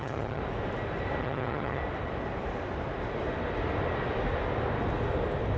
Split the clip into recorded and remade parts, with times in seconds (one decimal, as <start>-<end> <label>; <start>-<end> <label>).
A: 0.0-0.4 remade; 0.4-1.2 recorded; 1.2-1.8 remade; 1.8-5.6 recorded